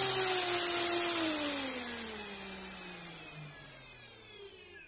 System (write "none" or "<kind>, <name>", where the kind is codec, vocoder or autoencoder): none